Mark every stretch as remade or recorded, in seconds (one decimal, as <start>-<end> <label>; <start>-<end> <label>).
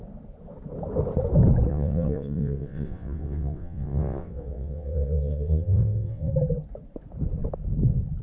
0.0-1.7 recorded; 1.7-6.3 remade; 6.3-8.2 recorded